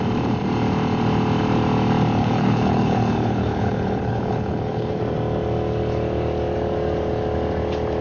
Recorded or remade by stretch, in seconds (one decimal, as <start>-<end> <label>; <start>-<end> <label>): 0.0-2.2 recorded; 2.2-5.0 remade; 5.0-8.0 recorded